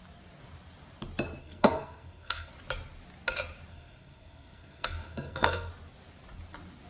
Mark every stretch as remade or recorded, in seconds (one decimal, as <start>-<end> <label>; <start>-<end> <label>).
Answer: 0.0-1.4 recorded; 1.4-2.5 remade; 2.5-3.7 recorded; 3.7-5.7 remade; 5.7-6.9 recorded